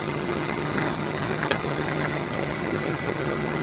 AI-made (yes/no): yes